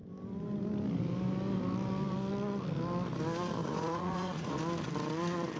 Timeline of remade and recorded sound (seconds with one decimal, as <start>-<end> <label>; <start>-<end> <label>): 0.0-3.6 recorded; 3.6-4.6 remade; 4.6-5.6 recorded